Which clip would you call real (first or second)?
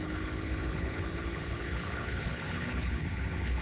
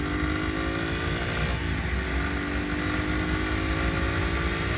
second